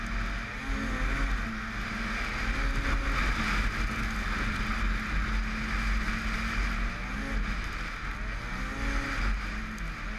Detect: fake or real real